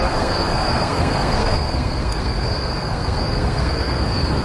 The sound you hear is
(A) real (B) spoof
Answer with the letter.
B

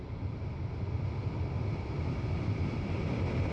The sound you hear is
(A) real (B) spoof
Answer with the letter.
A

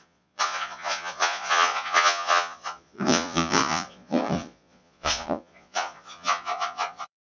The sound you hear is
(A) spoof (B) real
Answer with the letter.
A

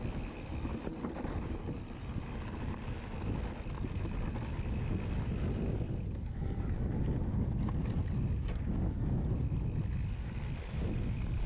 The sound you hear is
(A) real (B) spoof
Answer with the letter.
A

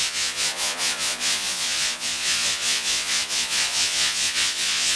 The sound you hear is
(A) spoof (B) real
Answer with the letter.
A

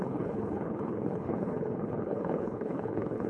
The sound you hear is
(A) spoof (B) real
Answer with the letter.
A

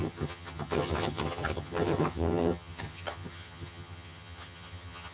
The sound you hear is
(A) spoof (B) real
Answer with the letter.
A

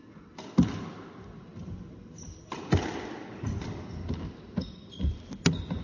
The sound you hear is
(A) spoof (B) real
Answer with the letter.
B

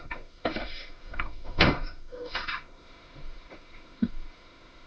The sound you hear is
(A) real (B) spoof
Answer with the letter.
B